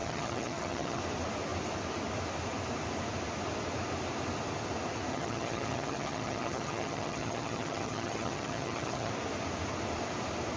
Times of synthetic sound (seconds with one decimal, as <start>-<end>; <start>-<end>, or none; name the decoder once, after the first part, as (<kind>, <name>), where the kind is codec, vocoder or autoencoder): 0.0-1.0 (vocoder, HiFi-GAN); 5.1-9.1